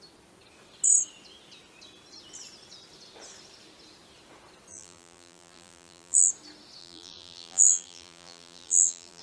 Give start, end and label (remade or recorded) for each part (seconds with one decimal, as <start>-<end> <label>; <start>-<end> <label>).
0.0-4.7 recorded; 4.7-6.3 remade; 6.3-6.8 recorded; 6.8-9.2 remade

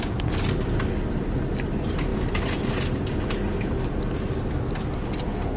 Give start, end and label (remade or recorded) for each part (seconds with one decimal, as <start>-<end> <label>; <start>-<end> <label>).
0.0-2.1 recorded; 2.1-2.6 remade; 2.6-5.6 recorded

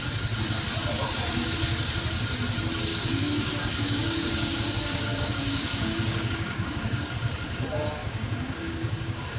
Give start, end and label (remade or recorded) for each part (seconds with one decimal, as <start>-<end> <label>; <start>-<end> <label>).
0.0-2.9 recorded; 2.9-7.1 remade; 7.1-8.0 recorded; 8.0-9.4 remade

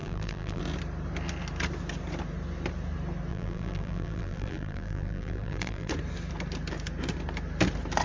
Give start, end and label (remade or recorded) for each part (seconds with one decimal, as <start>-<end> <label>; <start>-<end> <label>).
0.0-0.6 remade; 0.6-3.3 recorded; 3.3-5.9 remade; 5.9-8.0 recorded

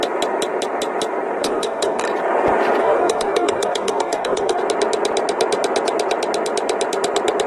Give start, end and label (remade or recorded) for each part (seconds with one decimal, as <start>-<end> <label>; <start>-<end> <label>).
0.0-1.4 recorded; 1.4-2.0 remade; 2.0-2.8 recorded; 2.8-4.6 remade; 4.6-7.5 recorded